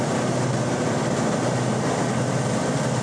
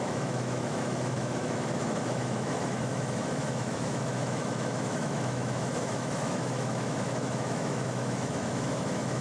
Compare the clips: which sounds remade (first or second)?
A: second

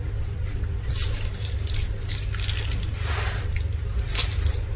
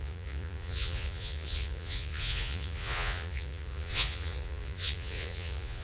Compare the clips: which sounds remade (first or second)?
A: second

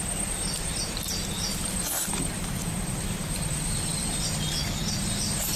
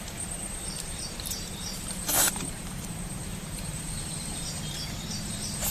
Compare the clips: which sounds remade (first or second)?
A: second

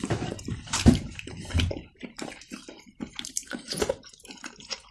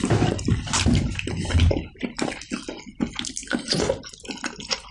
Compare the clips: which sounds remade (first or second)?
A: first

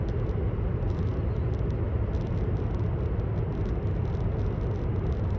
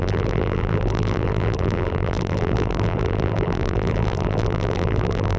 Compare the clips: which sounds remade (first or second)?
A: second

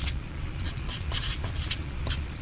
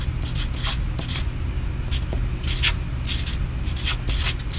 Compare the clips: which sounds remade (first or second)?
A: first